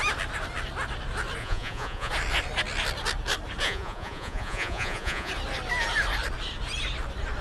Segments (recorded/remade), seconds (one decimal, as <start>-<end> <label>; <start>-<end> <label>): 0.0-1.4 recorded; 1.4-2.1 remade; 2.1-3.6 recorded; 3.6-5.3 remade; 5.3-7.4 recorded